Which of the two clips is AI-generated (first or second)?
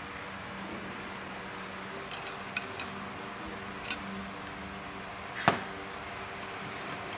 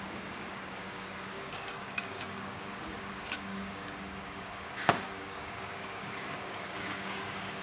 second